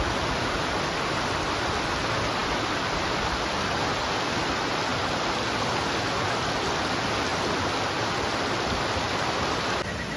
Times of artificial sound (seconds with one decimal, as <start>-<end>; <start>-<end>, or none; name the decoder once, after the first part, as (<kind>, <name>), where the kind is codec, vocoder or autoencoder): none